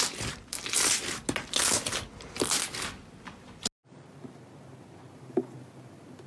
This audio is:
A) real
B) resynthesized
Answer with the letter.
A